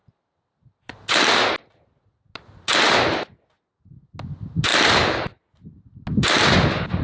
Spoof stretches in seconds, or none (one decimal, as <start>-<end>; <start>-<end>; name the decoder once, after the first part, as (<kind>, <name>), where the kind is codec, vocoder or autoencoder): none